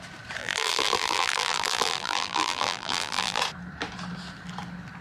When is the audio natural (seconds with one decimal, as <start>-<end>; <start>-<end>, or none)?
0.0-0.4; 3.4-5.0